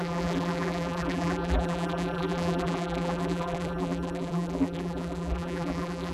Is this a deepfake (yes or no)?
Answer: yes